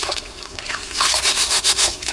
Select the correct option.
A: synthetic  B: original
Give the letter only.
A